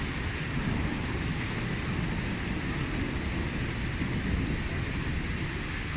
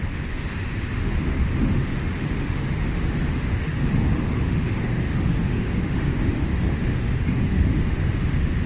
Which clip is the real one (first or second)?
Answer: first